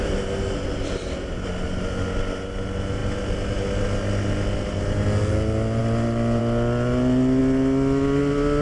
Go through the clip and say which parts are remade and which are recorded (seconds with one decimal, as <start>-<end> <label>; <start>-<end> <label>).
0.0-8.6 recorded